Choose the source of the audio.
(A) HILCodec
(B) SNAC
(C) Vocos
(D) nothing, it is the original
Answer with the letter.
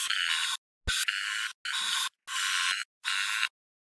D